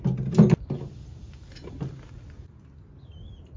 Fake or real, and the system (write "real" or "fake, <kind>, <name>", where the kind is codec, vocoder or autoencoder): real